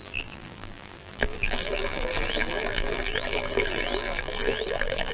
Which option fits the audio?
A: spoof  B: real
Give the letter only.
A